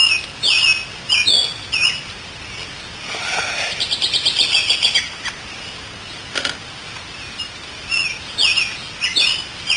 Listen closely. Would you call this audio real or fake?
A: real